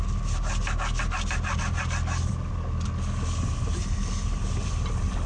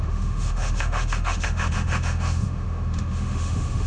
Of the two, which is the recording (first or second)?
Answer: first